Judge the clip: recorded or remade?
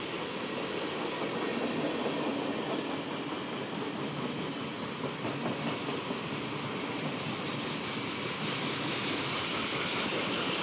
recorded